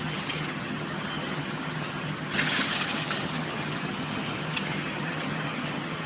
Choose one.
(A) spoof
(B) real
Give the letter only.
A